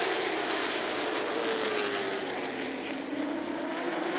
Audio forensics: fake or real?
real